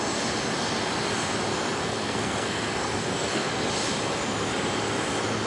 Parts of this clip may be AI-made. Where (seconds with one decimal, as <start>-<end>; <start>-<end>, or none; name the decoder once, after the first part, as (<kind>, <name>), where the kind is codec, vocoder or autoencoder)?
1.8-3.5 (codec, SNAC)